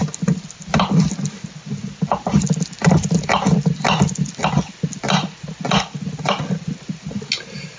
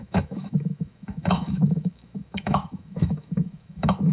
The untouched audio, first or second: first